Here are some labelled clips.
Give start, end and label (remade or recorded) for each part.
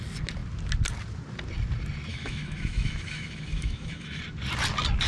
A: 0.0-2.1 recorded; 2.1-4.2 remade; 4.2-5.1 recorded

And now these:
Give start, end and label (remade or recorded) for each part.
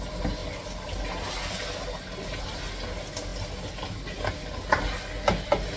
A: 0.0-5.8 recorded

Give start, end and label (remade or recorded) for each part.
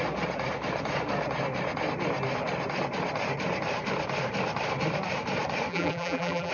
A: 0.0-5.7 recorded; 5.7-6.5 remade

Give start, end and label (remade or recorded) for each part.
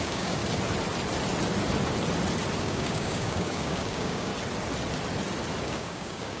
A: 0.0-0.4 remade; 0.4-2.6 recorded; 2.6-4.3 remade; 4.3-5.6 recorded; 5.6-6.4 remade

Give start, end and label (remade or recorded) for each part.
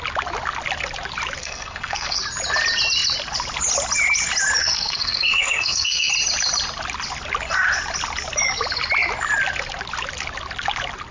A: 0.0-1.4 recorded; 1.4-2.2 remade; 2.2-4.6 recorded; 4.6-6.1 remade; 6.1-11.1 recorded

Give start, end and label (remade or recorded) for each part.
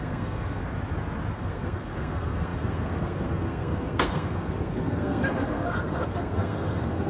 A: 0.0-0.6 remade; 0.6-1.3 recorded; 1.3-7.1 remade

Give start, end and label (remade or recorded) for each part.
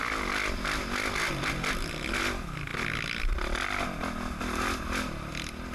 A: 0.0-5.7 recorded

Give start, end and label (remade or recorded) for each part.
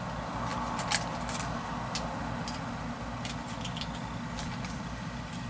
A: 0.0-5.5 recorded